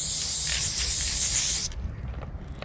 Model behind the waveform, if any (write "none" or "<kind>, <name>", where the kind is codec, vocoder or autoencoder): none